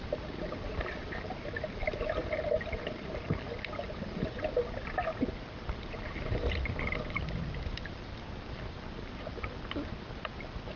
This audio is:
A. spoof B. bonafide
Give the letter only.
B